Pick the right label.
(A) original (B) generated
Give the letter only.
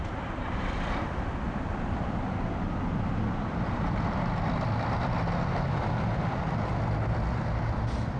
B